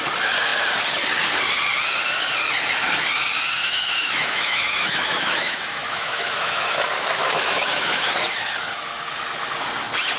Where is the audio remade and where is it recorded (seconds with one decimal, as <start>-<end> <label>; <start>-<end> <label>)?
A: 0.0-3.6 recorded; 3.6-8.0 remade; 8.0-10.2 recorded

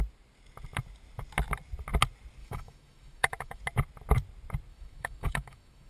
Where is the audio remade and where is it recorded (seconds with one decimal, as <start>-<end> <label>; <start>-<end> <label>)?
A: 0.0-2.4 recorded; 2.4-3.6 remade; 3.6-4.7 recorded; 4.7-5.9 remade

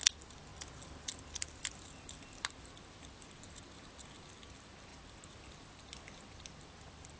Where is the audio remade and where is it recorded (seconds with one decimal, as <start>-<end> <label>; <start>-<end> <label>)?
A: 0.0-7.2 recorded

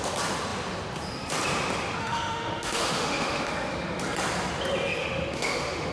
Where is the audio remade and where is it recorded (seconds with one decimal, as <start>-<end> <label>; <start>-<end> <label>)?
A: 0.0-2.0 recorded; 2.0-3.5 remade; 3.5-5.0 recorded; 5.0-5.9 remade

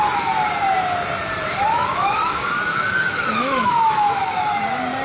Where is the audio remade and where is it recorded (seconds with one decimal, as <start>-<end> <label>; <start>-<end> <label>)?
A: 0.0-1.6 recorded; 1.6-4.6 remade; 4.6-5.0 recorded